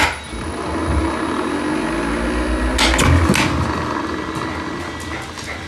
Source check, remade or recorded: recorded